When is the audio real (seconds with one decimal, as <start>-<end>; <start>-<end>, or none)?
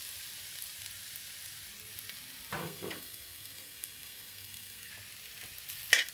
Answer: 0.0-2.6; 4.9-6.1